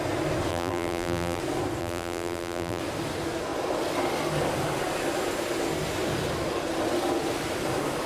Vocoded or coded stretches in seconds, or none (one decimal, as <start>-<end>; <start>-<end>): 0.5-1.4; 1.8-2.8